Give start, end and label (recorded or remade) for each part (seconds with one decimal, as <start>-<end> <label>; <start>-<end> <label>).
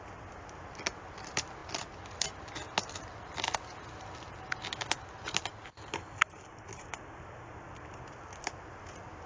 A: 0.0-9.3 recorded